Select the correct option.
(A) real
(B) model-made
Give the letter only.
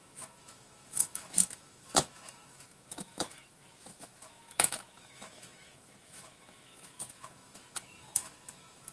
B